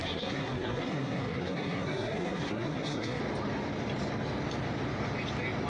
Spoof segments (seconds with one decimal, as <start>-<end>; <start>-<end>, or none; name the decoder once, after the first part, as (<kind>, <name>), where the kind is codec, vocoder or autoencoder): 0.0-3.2 (codec, SNAC)